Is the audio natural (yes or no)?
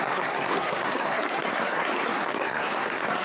no